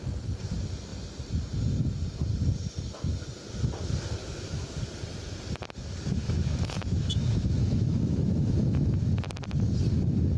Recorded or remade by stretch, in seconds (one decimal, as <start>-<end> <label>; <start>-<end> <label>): 0.0-4.2 recorded; 4.2-4.8 remade; 4.8-6.2 recorded; 6.2-8.9 remade; 8.9-10.4 recorded